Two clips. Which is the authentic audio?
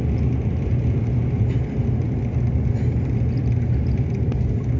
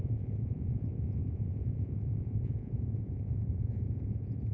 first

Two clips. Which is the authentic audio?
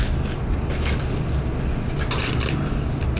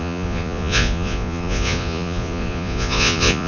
first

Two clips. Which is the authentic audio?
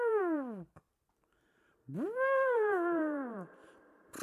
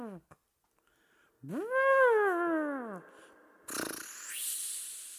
second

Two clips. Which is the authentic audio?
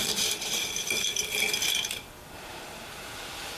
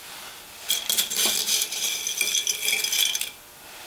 second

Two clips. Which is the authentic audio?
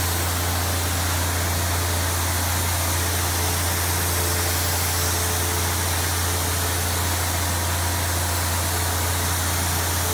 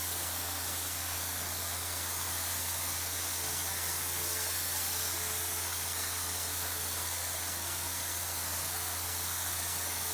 first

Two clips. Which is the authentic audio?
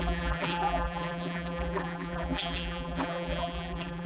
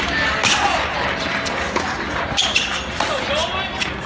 second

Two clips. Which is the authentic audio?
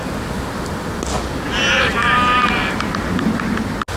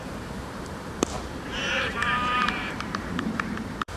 first